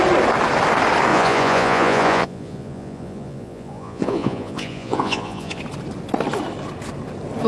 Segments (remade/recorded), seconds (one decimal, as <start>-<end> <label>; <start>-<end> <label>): 0.0-1.1 recorded; 1.1-5.6 remade; 5.6-7.5 recorded